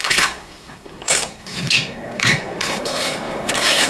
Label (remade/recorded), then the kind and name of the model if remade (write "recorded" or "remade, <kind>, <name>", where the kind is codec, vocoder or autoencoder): remade, codec, SNAC